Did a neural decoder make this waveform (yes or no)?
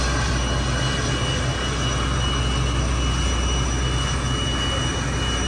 no